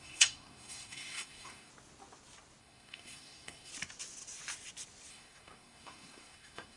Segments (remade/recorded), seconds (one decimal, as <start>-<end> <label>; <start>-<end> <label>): 0.0-1.7 remade; 1.7-2.6 recorded; 2.6-3.7 remade; 3.7-5.1 recorded; 5.1-6.8 remade